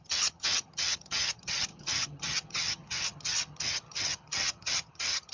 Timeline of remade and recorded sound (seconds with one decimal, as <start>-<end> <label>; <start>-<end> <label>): 0.0-5.3 remade